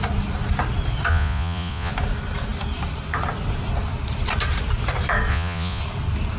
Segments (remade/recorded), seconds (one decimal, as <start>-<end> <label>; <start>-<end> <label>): 0.0-1.1 recorded; 1.1-1.9 remade; 1.9-5.3 recorded; 5.3-5.8 remade; 5.8-6.4 recorded